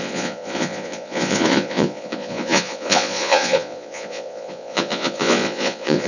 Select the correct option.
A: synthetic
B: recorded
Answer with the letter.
A